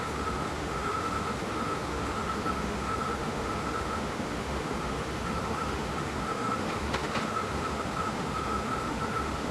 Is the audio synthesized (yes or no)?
yes